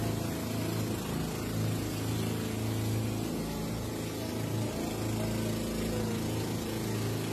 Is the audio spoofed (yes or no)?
no